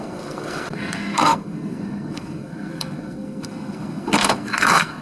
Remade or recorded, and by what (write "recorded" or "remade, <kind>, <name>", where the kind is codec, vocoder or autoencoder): remade, codec, SNAC